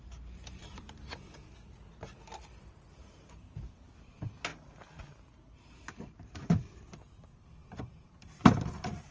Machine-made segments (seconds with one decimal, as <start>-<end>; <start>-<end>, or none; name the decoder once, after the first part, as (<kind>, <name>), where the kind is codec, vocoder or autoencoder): 0.0-1.1 (vocoder, BigVGAN v2); 2.9-4.5; 5.7-6.6; 7.8-9.1